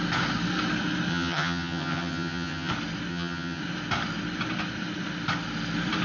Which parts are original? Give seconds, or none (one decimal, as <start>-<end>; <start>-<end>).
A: 0.0-1.1; 2.7-3.1; 3.6-6.0